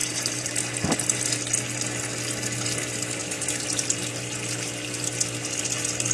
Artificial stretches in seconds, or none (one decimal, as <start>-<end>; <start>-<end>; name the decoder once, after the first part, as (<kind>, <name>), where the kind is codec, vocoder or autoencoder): 0.0-0.6 (vocoder, BigVGAN v2)